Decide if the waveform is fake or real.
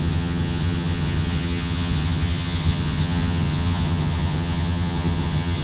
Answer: fake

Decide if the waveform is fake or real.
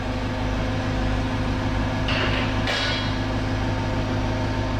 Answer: real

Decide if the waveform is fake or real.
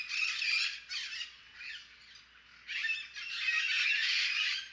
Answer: real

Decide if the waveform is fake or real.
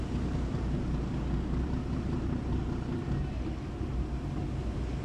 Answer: real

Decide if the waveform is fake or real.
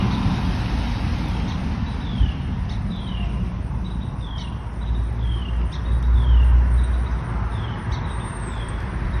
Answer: real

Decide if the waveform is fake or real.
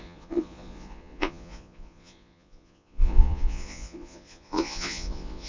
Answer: fake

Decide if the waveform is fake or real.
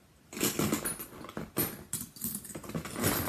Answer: real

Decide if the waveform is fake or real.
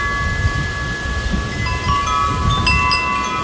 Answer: real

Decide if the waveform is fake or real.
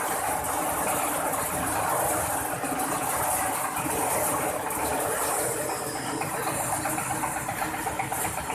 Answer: real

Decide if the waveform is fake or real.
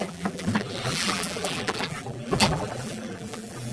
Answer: fake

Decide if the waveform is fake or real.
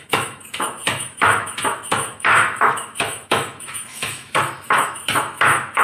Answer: fake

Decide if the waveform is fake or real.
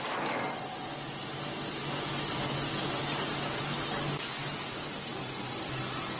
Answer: real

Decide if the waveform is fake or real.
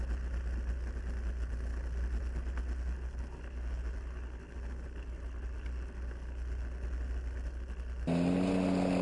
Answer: real